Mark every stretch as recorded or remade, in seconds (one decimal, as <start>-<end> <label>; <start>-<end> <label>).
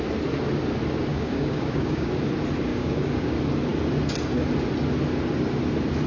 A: 0.0-1.1 recorded; 1.1-2.1 remade; 2.1-2.7 recorded; 2.7-3.3 remade; 3.3-6.1 recorded